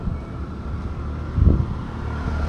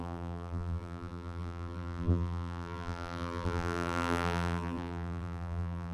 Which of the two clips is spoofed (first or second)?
second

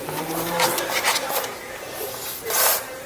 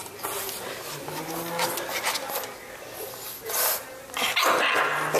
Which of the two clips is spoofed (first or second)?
first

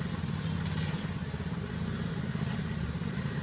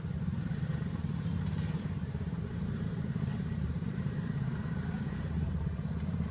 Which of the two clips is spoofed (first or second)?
second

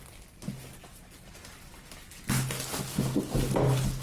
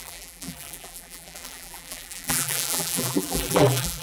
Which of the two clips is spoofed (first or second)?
second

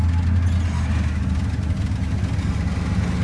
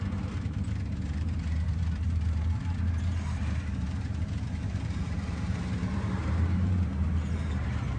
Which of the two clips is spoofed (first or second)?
second